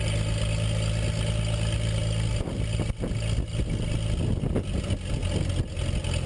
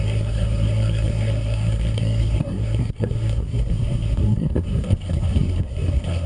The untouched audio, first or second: first